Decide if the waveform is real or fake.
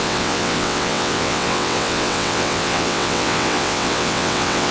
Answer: fake